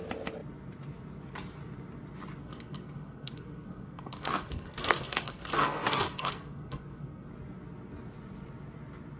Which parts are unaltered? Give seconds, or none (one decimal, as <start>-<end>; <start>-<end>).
0.0-2.4; 7.3-9.2

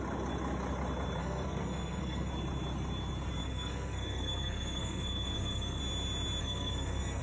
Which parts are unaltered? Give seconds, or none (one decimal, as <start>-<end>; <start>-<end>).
0.0-1.2; 2.3-3.4; 5.8-6.4